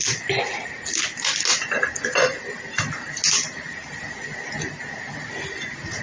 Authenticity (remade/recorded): recorded